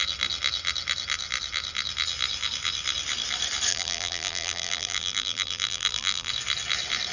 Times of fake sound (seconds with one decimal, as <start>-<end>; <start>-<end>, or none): 3.7-6.3